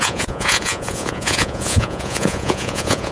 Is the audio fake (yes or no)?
yes